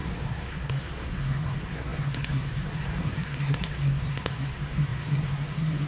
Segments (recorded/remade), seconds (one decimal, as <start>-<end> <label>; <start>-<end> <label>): 0.0-5.9 remade